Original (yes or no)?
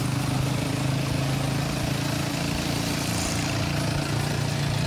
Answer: yes